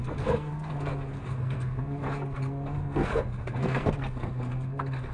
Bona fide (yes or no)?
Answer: no